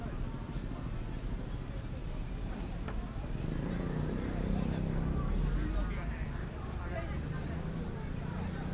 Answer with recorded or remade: recorded